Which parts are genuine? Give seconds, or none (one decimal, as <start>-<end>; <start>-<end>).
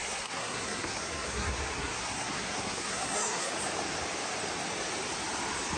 3.5-5.8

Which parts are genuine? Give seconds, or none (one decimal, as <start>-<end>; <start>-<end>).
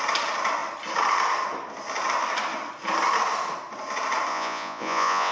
0.0-4.3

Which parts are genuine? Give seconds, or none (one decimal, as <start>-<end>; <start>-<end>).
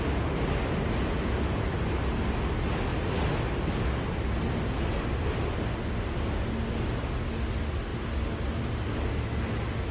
0.0-9.9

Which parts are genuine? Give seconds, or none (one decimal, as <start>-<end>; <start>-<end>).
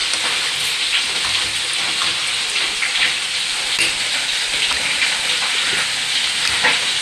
0.0-2.0; 5.4-7.0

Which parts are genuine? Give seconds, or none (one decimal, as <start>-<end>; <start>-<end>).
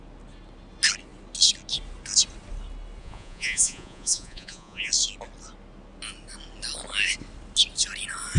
0.0-3.0; 4.9-8.4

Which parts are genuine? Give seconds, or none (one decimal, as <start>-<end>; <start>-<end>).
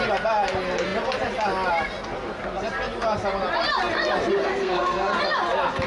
0.0-4.4; 5.2-5.9